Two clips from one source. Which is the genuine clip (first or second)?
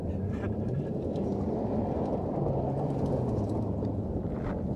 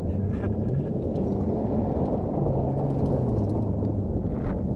second